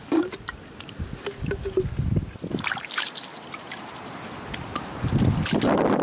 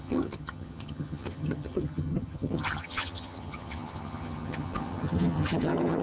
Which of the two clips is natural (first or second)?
first